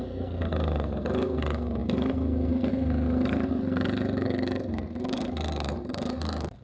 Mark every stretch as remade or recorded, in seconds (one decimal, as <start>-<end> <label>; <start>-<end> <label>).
0.0-6.6 remade